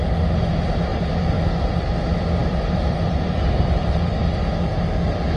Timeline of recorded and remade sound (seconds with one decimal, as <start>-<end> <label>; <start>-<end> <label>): 0.0-0.9 recorded; 0.9-1.4 remade; 1.4-2.4 recorded; 2.4-4.0 remade; 4.0-5.4 recorded